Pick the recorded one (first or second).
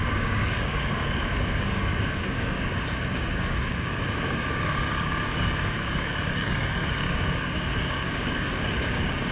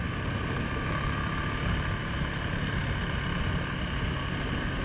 second